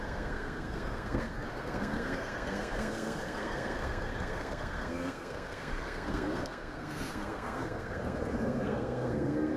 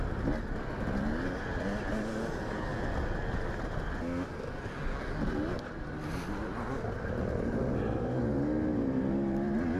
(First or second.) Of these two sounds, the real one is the second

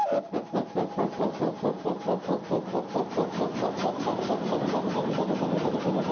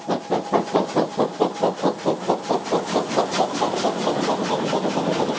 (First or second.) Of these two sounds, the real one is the second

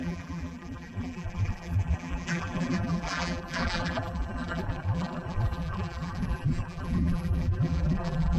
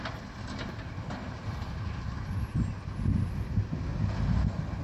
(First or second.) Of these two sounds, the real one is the second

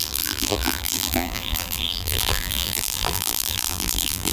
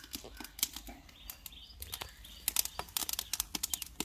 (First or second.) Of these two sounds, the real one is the second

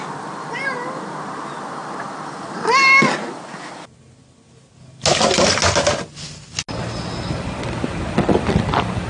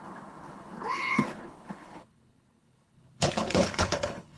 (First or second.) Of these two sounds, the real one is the first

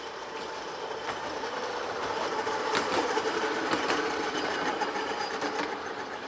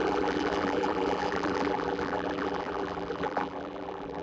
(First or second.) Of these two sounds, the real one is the first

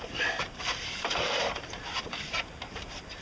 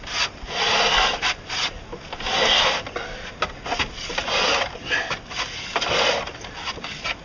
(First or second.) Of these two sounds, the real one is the second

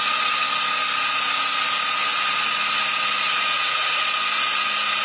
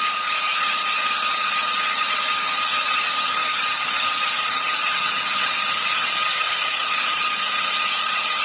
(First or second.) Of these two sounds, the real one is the first